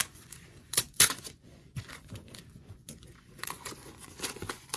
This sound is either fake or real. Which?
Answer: fake